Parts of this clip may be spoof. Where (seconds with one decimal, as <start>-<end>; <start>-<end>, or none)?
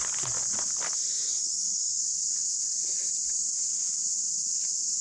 1.3-2.0